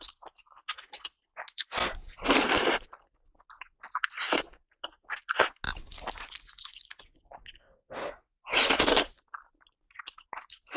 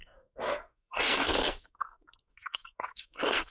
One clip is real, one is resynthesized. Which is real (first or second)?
first